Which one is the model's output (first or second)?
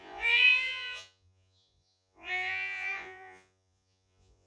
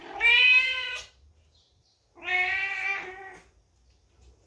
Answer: first